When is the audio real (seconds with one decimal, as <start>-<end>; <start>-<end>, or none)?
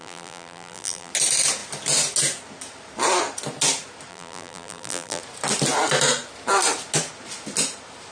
1.1-4.1; 5.2-8.1